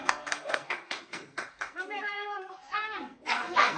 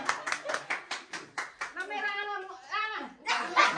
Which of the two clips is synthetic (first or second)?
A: first